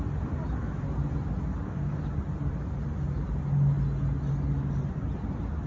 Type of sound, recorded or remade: recorded